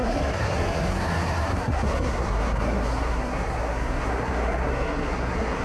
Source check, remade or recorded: remade